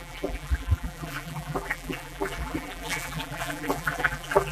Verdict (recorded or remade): remade